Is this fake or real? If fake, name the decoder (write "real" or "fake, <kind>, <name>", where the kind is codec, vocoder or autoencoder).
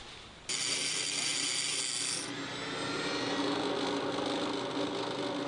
real